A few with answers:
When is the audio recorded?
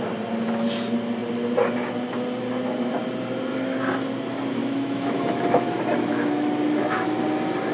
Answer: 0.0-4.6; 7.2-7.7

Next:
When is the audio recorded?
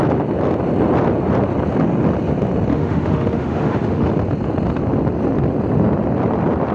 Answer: 0.0-2.7; 4.1-6.7